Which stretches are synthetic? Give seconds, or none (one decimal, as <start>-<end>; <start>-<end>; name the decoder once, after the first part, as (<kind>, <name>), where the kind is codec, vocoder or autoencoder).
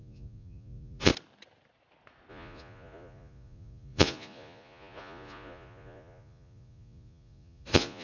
0.0-1.1 (vocoder, Vocos); 2.3-8.0